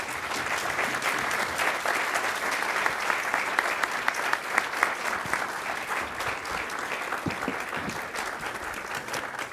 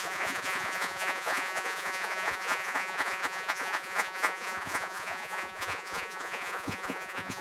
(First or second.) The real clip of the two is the first